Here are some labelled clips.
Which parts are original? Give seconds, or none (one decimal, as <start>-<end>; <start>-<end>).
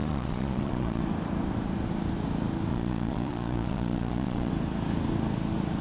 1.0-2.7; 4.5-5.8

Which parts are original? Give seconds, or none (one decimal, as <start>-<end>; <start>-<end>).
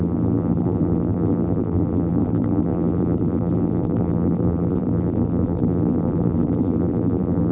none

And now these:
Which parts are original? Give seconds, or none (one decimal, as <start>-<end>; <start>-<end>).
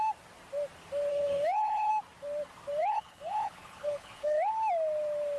0.0-1.1; 1.9-2.8; 4.5-5.4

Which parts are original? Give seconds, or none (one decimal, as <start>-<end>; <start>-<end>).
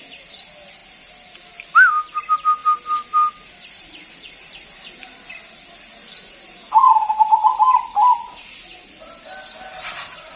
0.0-10.4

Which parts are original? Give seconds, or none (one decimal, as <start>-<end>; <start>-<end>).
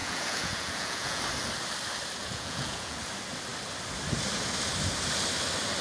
1.2-2.2; 3.0-5.8